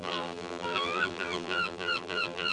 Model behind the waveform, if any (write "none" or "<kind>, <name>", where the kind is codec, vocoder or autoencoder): vocoder, BigVGAN v2